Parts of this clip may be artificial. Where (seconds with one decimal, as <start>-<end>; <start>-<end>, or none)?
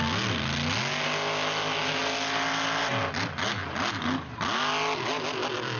none